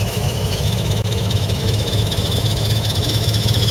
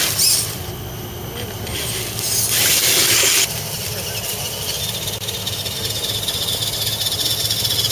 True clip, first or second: second